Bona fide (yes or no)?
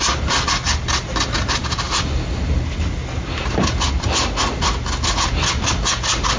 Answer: yes